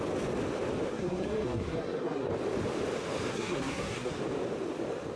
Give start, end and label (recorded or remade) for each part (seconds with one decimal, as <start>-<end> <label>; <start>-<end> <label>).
0.0-0.9 recorded; 0.9-2.3 remade; 2.3-3.3 recorded; 3.3-4.1 remade; 4.1-5.2 recorded